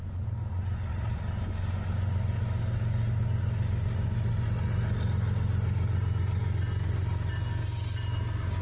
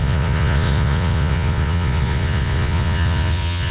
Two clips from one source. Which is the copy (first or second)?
second